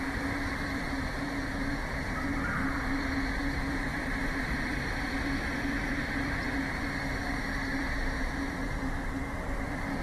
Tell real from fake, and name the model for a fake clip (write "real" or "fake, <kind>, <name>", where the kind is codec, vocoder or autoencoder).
fake, vocoder, BigVGAN v2